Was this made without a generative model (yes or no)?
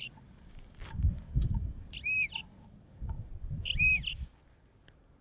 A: no